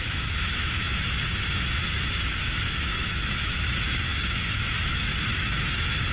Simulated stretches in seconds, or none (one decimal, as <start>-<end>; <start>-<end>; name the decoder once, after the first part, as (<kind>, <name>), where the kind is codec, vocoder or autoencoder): 0.0-6.1 (autoencoder, DAC-VAE)